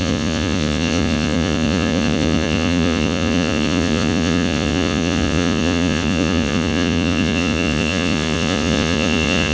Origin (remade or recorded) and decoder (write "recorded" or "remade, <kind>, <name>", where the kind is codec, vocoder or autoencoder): remade, vocoder, Vocos